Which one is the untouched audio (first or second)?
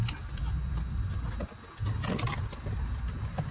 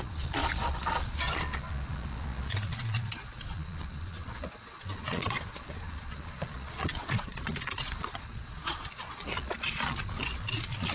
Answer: first